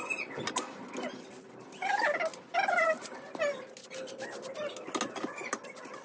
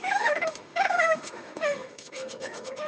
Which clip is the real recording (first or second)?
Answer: first